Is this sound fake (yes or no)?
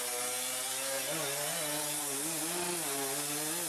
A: no